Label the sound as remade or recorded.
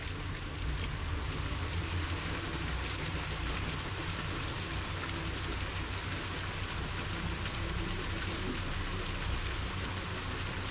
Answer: recorded